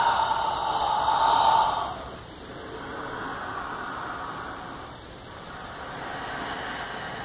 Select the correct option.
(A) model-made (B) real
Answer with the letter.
B